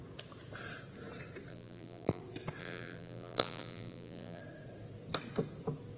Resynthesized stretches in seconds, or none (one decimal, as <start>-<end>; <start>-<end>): 1.5-2.2; 2.6-4.4